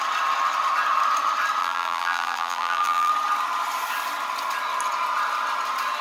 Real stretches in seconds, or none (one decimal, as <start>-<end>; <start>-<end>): 0.0-1.6; 3.1-6.0